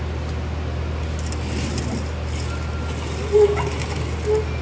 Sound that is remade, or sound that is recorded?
recorded